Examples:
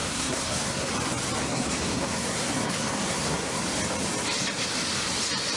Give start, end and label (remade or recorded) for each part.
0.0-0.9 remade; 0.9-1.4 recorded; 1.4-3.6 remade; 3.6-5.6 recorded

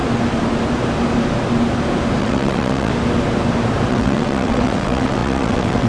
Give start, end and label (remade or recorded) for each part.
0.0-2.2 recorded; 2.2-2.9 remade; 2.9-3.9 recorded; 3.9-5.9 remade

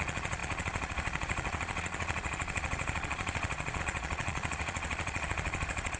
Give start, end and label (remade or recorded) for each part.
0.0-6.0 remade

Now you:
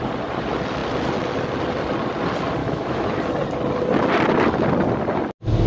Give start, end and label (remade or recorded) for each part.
0.0-2.6 recorded; 2.6-3.2 remade; 3.2-5.7 recorded

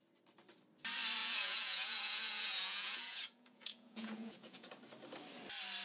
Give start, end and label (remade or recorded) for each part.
0.0-1.2 recorded; 1.2-4.7 remade; 4.7-5.8 recorded

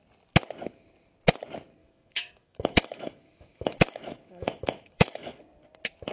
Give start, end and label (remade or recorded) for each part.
0.0-1.8 recorded; 1.8-5.4 remade; 5.4-6.1 recorded

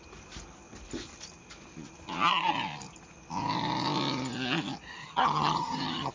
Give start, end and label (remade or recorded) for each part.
0.0-5.0 recorded; 5.0-6.1 remade